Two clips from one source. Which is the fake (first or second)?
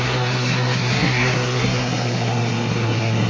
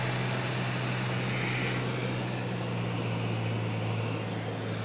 first